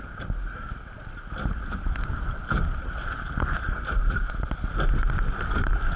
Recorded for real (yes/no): yes